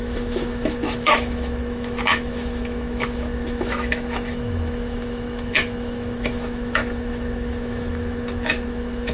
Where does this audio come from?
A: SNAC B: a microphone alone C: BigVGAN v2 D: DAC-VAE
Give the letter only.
D